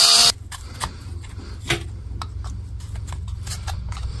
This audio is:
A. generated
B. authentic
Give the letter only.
B